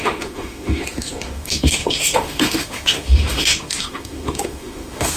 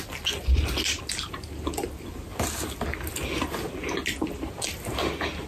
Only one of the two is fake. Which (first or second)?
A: first